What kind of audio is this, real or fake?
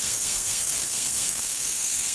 fake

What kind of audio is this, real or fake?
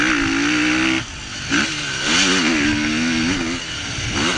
real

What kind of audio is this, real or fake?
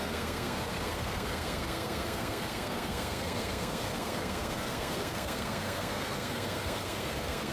fake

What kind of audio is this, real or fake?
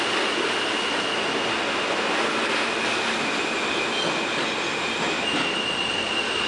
real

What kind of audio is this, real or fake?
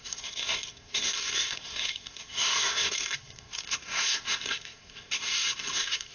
fake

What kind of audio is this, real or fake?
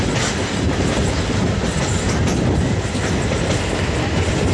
real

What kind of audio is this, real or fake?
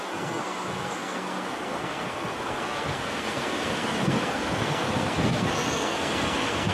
fake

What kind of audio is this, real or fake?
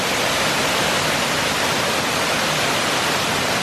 real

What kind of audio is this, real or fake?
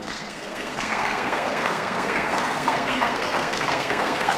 fake